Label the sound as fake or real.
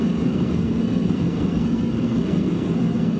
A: fake